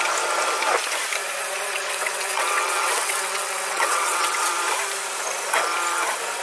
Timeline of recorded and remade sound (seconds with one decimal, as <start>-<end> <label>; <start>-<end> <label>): 0.0-1.7 recorded; 1.7-4.5 remade; 4.5-6.4 recorded